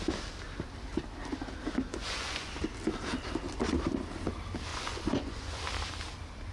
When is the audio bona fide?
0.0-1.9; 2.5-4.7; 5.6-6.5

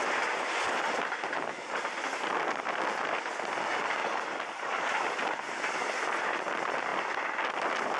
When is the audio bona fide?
0.0-8.0

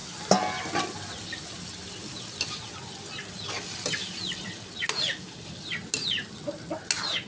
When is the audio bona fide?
0.0-7.3

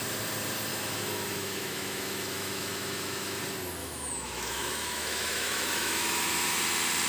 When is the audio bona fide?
0.0-0.7; 3.4-3.8; 6.6-7.1

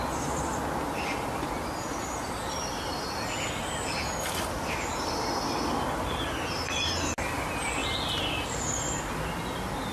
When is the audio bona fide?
0.0-9.9

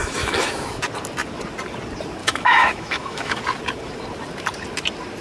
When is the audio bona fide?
0.8-2.2; 3.4-5.2